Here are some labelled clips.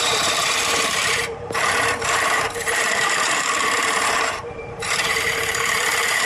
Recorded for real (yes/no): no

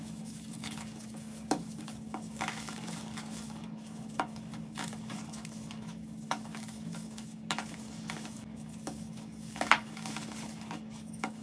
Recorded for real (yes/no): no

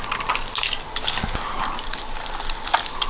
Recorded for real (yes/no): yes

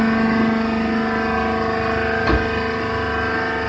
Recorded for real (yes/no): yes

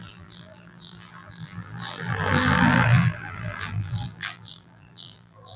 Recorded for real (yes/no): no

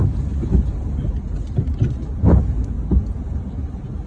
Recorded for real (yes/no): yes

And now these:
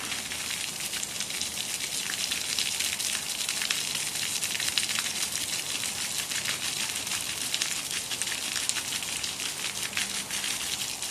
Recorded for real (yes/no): yes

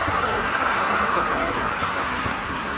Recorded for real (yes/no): no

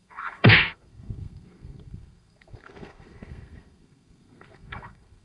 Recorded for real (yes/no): no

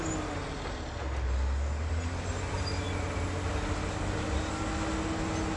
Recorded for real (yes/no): yes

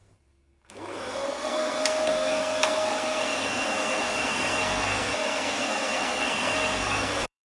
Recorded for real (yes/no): no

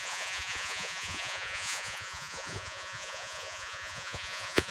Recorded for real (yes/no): no